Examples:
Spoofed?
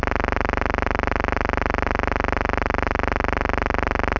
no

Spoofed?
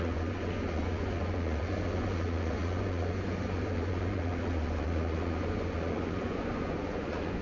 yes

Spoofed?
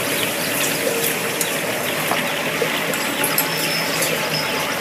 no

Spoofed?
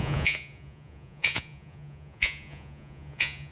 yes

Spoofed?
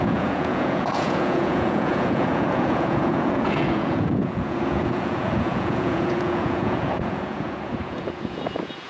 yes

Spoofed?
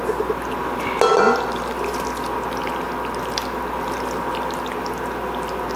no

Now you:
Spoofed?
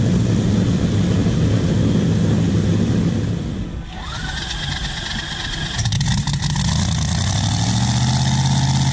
no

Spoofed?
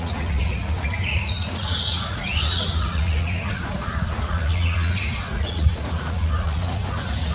yes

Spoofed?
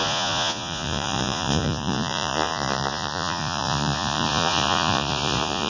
yes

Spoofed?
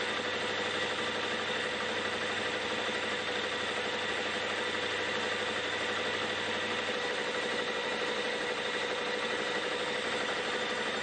no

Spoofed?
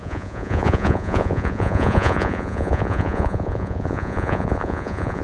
yes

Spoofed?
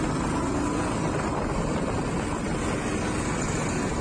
no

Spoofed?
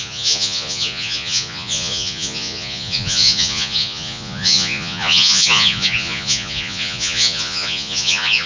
yes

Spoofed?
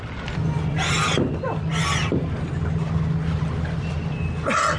no